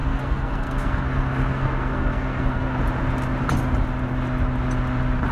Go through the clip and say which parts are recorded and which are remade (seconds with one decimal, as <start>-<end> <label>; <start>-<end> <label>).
0.0-2.8 remade; 2.8-5.3 recorded